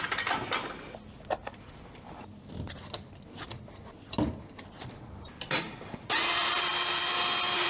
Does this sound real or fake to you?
fake